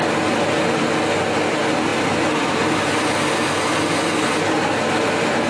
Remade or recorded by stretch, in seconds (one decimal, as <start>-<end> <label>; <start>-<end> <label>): 0.0-5.5 recorded